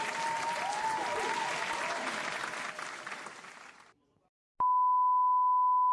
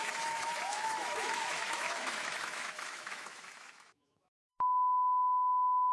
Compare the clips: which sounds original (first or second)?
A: first